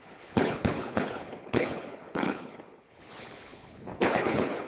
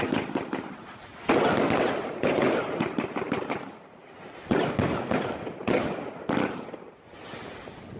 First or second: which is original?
second